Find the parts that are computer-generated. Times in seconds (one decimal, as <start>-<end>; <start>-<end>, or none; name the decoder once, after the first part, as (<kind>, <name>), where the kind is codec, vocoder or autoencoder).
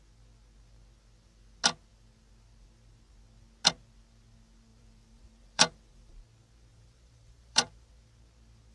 4.7-6.1 (vocoder, BigVGAN v2); 6.7-7.9